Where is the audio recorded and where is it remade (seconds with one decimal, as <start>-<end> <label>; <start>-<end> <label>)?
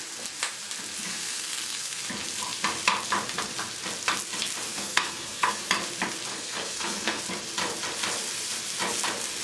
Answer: 0.0-1.1 recorded; 1.1-2.0 remade; 2.0-4.7 recorded; 4.7-5.6 remade; 5.6-6.3 recorded; 6.3-7.2 remade; 7.2-9.4 recorded